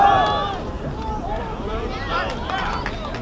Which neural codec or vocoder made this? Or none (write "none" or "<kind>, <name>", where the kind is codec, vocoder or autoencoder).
none